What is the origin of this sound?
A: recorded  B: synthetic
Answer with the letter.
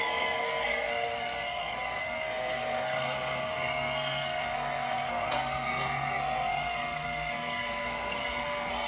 B